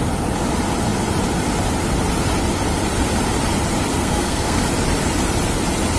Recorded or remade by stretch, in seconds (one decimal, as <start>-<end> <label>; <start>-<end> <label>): 0.0-3.9 recorded; 3.9-4.6 remade; 4.6-6.0 recorded